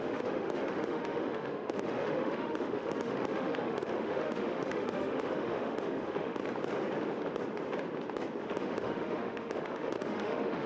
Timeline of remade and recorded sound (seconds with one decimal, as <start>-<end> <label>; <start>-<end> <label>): 0.0-6.4 remade; 6.4-8.4 recorded; 8.4-10.7 remade